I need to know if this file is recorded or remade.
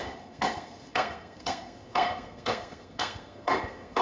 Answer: remade